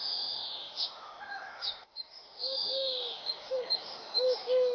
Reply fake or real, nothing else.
fake